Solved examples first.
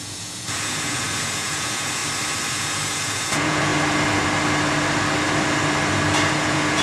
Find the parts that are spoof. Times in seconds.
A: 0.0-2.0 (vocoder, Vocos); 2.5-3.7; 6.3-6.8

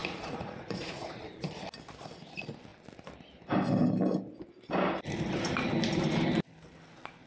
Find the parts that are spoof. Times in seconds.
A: 0.0-1.2 (vocoder, Vocos)

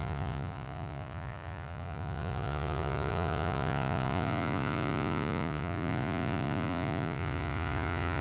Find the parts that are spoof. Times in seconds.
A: 0.0-8.2 (vocoder, Vocos)